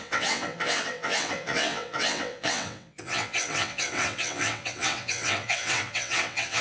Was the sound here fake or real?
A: fake